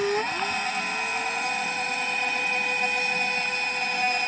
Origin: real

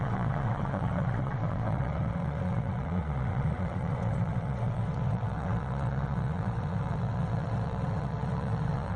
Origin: fake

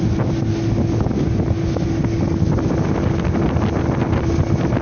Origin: real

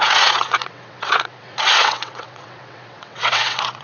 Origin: fake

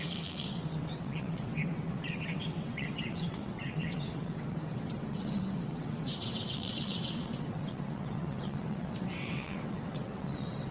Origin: fake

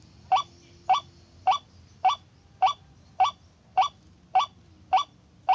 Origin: real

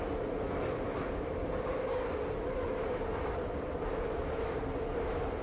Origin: real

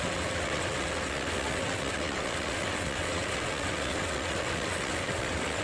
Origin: fake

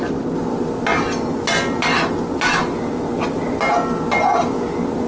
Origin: real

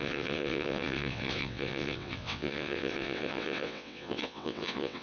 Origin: fake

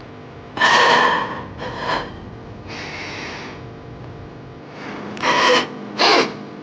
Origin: real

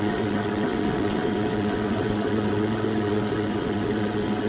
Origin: fake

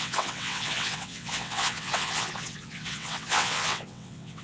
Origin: fake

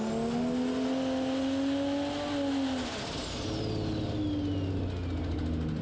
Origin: real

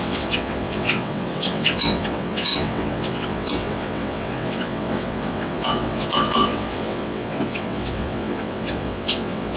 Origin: fake